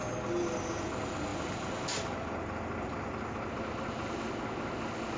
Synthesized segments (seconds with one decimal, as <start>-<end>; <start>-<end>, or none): none